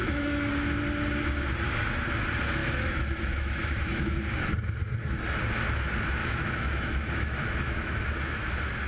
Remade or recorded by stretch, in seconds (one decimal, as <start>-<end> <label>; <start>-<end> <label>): 0.0-0.5 remade; 0.5-2.6 recorded; 2.6-4.2 remade; 4.2-6.2 recorded; 6.2-8.5 remade; 8.5-8.9 recorded